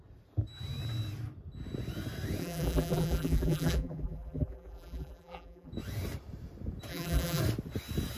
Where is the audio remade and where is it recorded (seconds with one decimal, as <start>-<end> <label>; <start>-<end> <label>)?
0.0-2.4 recorded; 2.4-5.7 remade; 5.7-6.9 recorded; 6.9-7.4 remade; 7.4-8.2 recorded